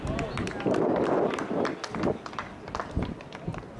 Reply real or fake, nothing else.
real